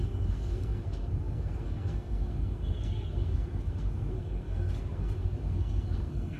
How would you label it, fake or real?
fake